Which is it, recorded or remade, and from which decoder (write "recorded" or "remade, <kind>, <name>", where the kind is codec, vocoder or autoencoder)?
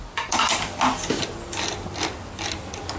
recorded